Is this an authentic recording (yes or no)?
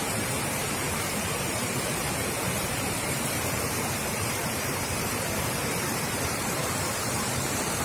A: no